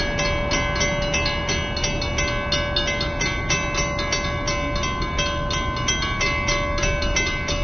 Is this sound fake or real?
real